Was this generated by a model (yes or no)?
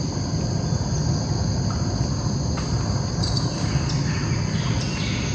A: no